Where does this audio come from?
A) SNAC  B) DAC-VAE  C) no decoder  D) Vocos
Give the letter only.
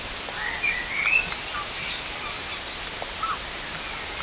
C